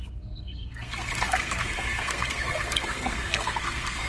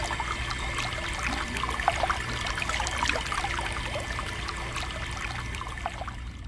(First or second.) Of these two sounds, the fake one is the first